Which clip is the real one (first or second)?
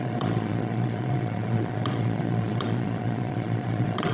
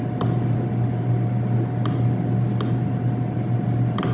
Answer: second